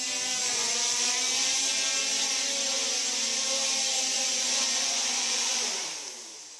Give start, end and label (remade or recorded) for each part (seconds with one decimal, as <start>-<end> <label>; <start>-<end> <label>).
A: 0.0-0.4 recorded; 0.4-1.2 remade; 1.2-3.9 recorded; 3.9-5.8 remade; 5.8-6.6 recorded